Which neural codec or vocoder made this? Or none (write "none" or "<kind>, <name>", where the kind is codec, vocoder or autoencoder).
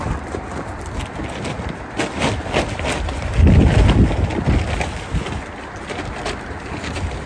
none